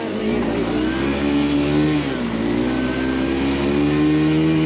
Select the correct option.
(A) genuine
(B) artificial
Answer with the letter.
A